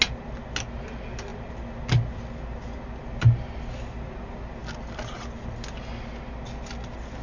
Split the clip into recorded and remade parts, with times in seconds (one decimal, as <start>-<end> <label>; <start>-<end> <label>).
0.0-7.2 recorded